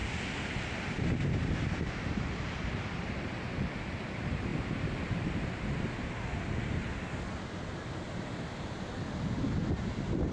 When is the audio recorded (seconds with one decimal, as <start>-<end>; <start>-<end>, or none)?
0.0-4.5; 6.4-10.3